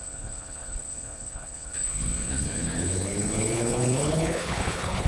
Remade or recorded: remade